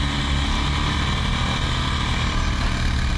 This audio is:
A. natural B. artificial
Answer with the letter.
A